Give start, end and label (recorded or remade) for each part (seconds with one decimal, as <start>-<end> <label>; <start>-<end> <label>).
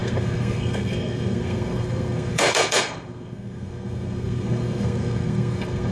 0.0-5.9 remade